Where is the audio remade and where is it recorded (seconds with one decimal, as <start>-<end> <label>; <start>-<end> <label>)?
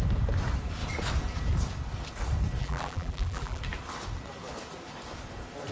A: 0.0-2.6 recorded; 2.6-3.6 remade; 3.6-5.7 recorded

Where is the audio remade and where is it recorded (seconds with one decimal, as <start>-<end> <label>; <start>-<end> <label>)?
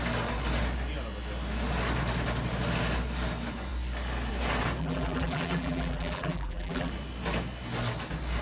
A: 0.0-4.8 recorded; 4.8-6.9 remade; 6.9-8.4 recorded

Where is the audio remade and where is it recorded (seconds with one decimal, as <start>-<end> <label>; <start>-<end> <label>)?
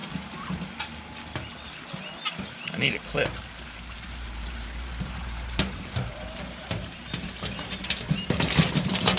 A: 0.0-2.3 recorded; 2.3-9.2 remade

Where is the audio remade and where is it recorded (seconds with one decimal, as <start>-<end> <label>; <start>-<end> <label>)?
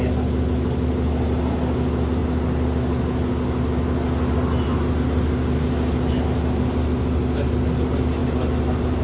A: 0.0-9.0 recorded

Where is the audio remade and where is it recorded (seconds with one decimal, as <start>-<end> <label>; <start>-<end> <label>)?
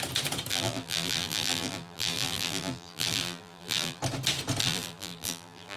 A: 0.0-0.5 recorded; 0.5-4.0 remade; 4.0-4.6 recorded; 4.6-5.8 remade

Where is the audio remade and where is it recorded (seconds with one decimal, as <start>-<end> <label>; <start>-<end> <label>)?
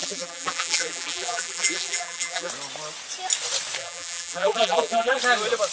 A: 0.0-2.5 remade; 2.5-3.8 recorded; 3.8-5.2 remade; 5.2-5.7 recorded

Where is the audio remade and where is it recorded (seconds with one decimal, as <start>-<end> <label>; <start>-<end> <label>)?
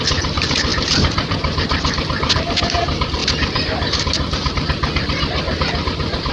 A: 0.0-0.7 recorded; 0.7-2.1 remade; 2.1-3.2 recorded; 3.2-4.5 remade; 4.5-6.3 recorded